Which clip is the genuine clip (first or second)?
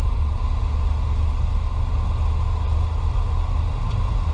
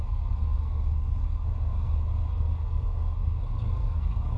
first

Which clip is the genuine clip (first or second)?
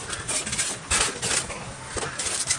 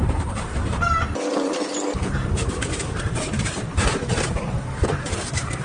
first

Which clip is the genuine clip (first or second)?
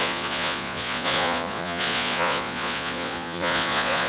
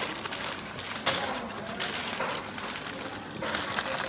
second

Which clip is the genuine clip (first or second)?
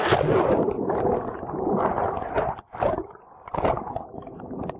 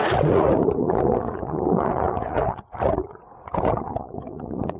first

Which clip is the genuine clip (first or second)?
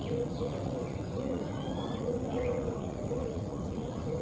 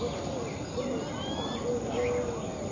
second